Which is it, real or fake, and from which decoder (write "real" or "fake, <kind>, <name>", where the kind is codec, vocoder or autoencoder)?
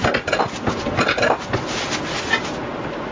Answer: real